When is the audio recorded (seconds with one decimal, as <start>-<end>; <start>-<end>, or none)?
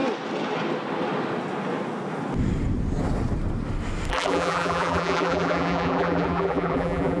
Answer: 0.0-4.1